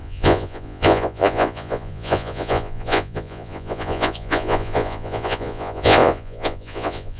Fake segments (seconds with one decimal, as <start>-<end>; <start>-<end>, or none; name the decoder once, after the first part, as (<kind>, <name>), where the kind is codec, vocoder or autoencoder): 0.0-7.2 (vocoder, Vocos)

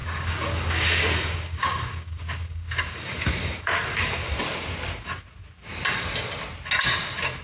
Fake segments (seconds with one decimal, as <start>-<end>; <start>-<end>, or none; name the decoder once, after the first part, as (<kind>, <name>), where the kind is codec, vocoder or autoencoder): 0.0-4.4 (codec, DAC)